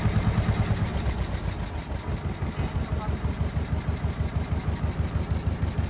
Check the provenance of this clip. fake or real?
real